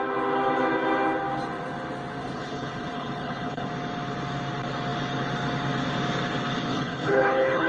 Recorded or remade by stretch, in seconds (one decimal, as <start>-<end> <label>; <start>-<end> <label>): 0.0-2.2 recorded; 2.2-3.7 remade; 3.7-6.7 recorded; 6.7-7.7 remade